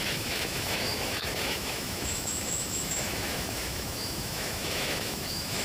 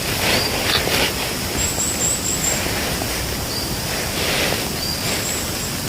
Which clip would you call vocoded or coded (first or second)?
first